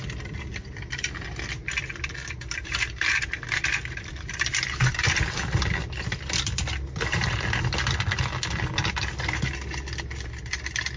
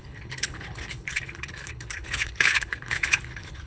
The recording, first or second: first